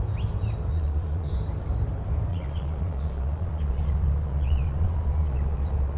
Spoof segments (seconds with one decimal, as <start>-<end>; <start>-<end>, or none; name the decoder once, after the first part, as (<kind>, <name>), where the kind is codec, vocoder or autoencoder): 0.7-1.3 (vocoder, Vocos); 2.3-6.0